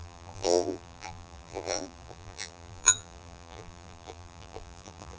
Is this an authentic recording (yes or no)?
no